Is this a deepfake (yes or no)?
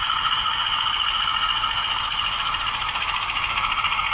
no